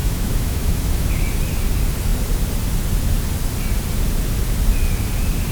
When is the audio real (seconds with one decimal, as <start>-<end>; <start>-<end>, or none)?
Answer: 1.1-5.5